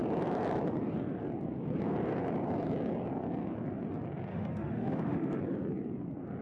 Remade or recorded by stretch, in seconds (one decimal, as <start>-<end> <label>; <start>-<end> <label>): 0.0-4.3 recorded; 4.3-5.4 remade; 5.4-6.4 recorded

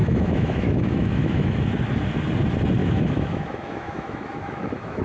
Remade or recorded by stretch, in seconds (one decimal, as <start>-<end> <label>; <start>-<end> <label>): 0.0-1.7 remade; 1.7-2.8 recorded; 2.8-5.0 remade

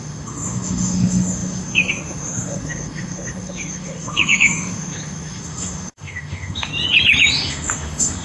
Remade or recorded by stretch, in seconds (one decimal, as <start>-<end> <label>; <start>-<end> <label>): 0.0-6.7 remade; 6.7-7.3 recorded; 7.3-8.2 remade

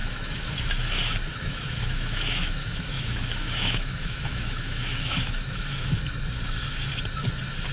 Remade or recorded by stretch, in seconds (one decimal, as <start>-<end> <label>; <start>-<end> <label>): 0.0-0.5 remade; 0.5-1.3 recorded; 1.3-5.9 remade; 5.9-7.7 recorded